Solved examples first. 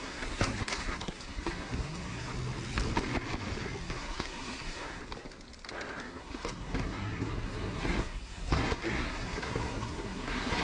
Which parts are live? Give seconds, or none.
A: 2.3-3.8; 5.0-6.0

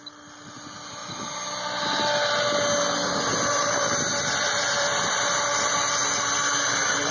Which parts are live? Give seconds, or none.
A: 0.0-7.1

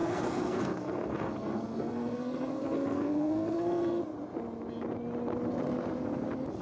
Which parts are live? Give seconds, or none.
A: 4.0-6.6

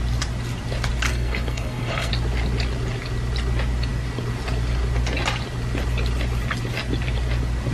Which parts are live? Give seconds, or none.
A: 0.0-1.1; 2.1-7.7

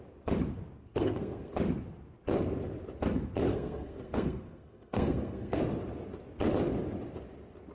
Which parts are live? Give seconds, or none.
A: 0.0-0.8; 1.5-3.5; 5.6-7.7